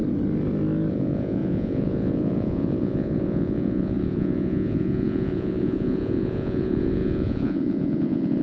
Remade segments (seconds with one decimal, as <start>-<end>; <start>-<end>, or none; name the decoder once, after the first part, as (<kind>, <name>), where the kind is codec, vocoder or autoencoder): 0.9-8.4 (vocoder, Vocos)